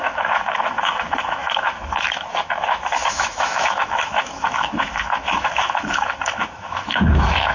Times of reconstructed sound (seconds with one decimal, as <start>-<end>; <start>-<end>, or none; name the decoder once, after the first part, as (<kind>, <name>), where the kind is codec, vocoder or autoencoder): 0.0-7.5 (autoencoder, DAC-VAE)